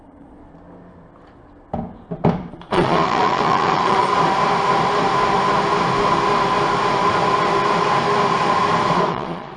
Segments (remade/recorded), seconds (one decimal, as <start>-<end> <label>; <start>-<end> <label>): 0.0-0.4 remade; 0.4-2.5 recorded; 2.5-4.1 remade; 4.1-9.1 recorded; 9.1-9.6 remade